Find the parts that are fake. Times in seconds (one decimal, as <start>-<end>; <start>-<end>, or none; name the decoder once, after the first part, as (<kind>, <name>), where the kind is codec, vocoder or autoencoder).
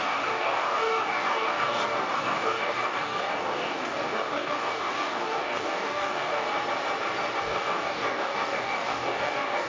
0.0-6.5 (codec, DAC); 7.4-9.7